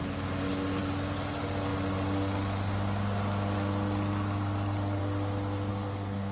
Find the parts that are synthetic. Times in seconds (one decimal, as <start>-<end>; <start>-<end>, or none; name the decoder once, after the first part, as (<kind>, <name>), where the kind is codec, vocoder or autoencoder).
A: 5.7-6.3 (codec, SNAC)